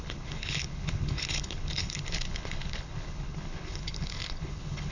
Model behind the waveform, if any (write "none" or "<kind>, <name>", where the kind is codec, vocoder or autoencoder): codec, HILCodec